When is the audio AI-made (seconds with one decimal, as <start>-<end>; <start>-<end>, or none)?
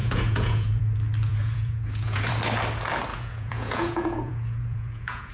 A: 0.0-0.8; 1.3-2.3; 3.1-5.3